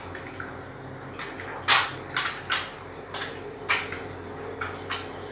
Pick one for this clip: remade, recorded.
recorded